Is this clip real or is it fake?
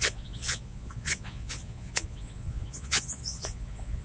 fake